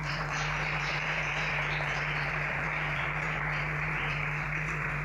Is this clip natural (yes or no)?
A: no